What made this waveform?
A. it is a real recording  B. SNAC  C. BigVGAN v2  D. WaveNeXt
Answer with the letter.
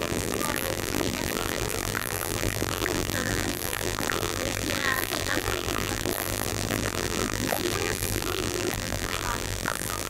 C